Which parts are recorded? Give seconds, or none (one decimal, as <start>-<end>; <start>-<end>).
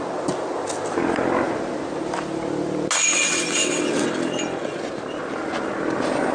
0.0-3.1; 4.1-6.3